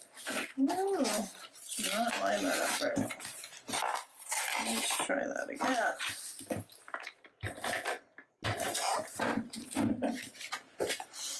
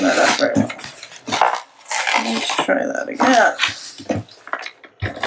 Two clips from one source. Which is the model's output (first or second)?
first